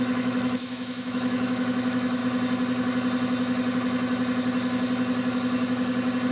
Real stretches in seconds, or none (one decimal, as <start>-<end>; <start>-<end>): 2.2-6.3